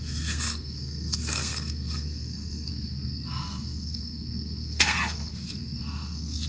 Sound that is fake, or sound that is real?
fake